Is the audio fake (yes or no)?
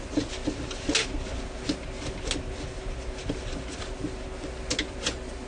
no